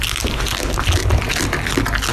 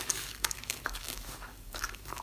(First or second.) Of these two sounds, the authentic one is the first